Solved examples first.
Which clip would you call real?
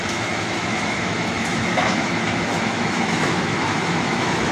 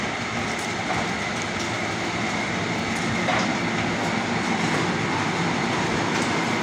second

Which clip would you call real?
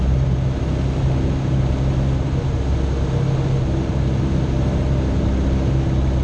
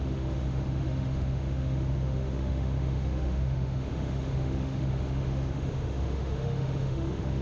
first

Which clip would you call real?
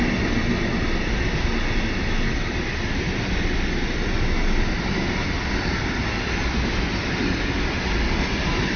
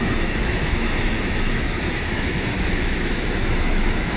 first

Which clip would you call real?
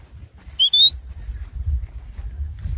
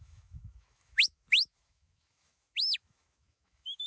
first